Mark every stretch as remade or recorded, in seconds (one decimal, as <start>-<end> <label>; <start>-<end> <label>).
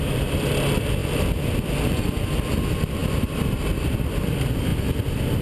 0.0-5.4 recorded